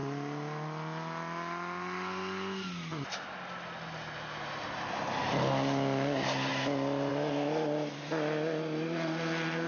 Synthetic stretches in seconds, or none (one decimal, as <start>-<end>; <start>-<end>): none